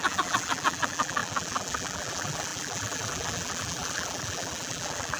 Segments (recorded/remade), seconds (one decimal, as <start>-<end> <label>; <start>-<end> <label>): 0.0-5.2 remade